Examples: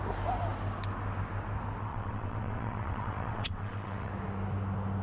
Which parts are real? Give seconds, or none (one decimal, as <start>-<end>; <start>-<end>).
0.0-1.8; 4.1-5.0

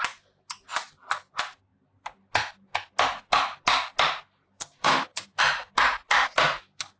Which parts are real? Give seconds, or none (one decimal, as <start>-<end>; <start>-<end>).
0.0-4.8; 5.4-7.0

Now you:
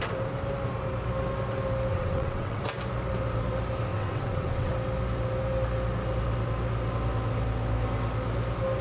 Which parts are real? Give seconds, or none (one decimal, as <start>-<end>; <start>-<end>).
0.0-1.9; 2.6-3.9; 4.7-8.8

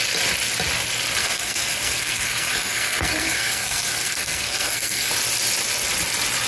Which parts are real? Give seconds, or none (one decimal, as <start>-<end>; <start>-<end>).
0.0-1.2; 5.1-6.5

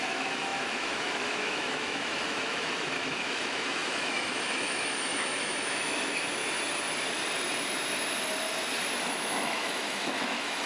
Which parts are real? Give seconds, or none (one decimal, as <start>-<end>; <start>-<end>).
6.4-9.1

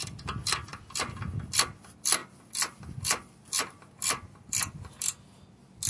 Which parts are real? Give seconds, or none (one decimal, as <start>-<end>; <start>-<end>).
0.0-5.9

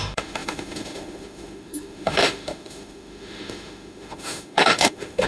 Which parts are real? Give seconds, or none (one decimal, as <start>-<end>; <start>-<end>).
none

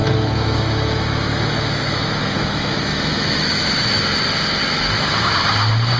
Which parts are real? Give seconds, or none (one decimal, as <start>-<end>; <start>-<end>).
3.6-4.6; 5.3-6.0